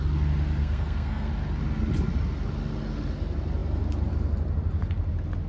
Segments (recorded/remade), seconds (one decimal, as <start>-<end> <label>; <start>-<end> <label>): 0.0-0.6 recorded; 0.6-1.3 remade; 1.3-5.5 recorded

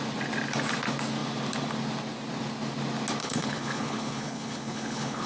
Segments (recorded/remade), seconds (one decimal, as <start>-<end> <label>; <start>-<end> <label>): 0.0-3.2 recorded; 3.2-5.3 remade

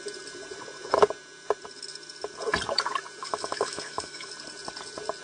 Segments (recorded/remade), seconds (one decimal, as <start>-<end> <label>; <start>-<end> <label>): 0.0-3.2 recorded; 3.2-4.3 remade; 4.3-5.2 recorded

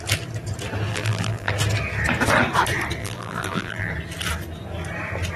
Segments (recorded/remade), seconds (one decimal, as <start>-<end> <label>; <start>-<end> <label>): 0.0-0.9 recorded; 0.9-1.5 remade; 1.5-3.0 recorded; 3.0-3.9 remade; 3.9-5.4 recorded

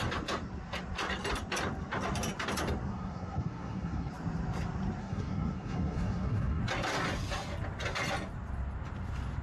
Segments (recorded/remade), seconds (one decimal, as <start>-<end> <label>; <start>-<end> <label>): 0.0-2.9 recorded; 2.9-4.1 remade; 4.1-5.0 recorded; 5.0-6.6 remade; 6.6-9.4 recorded

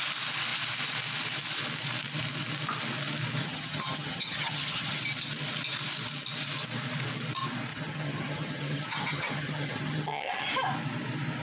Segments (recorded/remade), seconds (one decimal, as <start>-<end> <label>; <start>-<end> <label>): 0.0-3.4 recorded; 3.4-5.0 remade; 5.0-7.7 recorded; 7.7-10.5 remade; 10.5-11.4 recorded